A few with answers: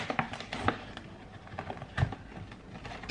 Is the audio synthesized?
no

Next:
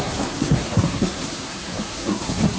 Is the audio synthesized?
yes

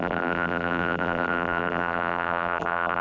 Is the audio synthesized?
yes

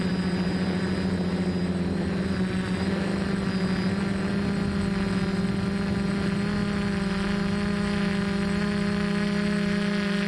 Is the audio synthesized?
no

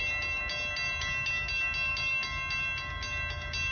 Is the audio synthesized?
no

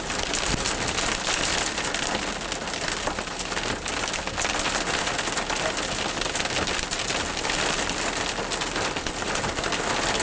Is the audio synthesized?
no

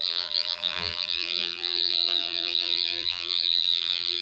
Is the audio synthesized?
yes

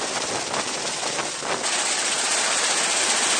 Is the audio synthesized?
no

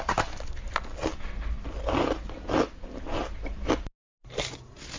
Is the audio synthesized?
no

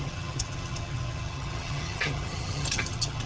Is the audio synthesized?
yes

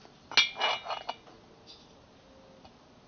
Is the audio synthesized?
no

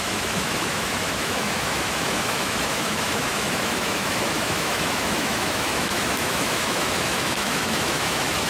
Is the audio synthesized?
yes